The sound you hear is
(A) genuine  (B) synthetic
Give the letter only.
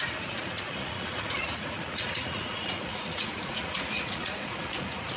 B